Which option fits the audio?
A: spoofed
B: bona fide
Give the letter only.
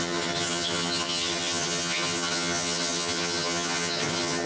A